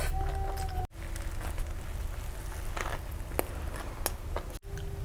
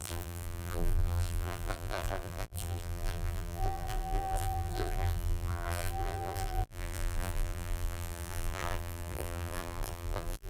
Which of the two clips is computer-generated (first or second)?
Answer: second